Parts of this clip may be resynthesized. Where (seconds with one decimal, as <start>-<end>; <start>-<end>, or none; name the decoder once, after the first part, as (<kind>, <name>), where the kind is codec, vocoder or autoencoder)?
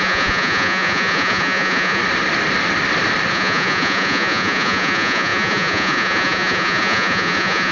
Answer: 0.0-2.0 (vocoder, Vocos); 3.3-7.7